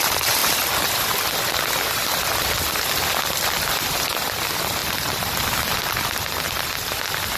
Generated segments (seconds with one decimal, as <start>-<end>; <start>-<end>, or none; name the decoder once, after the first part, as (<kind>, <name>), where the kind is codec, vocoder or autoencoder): 4.8-6.4 (vocoder, BigVGAN v2)